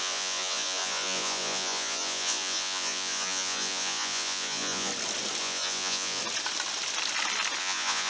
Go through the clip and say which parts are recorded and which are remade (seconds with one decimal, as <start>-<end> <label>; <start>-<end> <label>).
0.0-4.9 remade; 4.9-5.4 recorded; 5.4-6.2 remade; 6.2-7.6 recorded; 7.6-8.1 remade